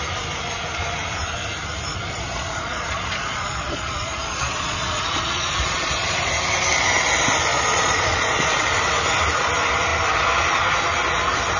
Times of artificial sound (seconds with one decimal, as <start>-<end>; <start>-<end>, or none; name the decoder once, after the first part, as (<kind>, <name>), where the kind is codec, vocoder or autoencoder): 1.9-6.3 (vocoder, Vocos); 7.5-8.6

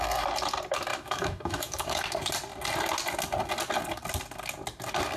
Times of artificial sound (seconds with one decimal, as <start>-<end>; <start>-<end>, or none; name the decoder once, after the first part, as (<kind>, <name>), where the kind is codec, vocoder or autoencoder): 0.9-2.0 (autoencoder, DAC-VAE)

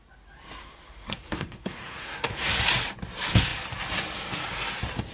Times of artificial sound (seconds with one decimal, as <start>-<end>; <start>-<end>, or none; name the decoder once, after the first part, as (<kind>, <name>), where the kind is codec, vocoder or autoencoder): 0.6-2.5 (codec, SNAC)

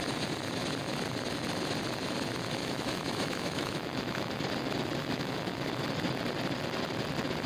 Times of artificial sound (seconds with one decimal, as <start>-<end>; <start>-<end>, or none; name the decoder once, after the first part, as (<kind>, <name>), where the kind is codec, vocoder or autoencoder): 2.6-4.3 (autoencoder, DAC-VAE); 5.0-5.7

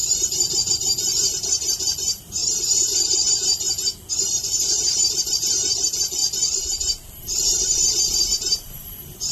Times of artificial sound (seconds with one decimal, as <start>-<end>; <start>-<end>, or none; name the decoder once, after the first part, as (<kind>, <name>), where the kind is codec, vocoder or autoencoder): 0.0-2.4 (vocoder, BigVGAN v2); 4.1-6.2; 7.4-9.3

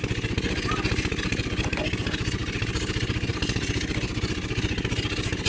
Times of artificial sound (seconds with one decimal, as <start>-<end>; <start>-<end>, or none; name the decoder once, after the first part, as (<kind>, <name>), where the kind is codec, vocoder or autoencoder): none

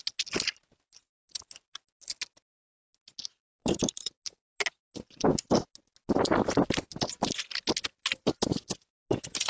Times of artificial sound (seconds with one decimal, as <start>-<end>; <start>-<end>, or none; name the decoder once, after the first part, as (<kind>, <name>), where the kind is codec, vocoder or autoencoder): 3.6-4.1 (vocoder, BigVGAN v2)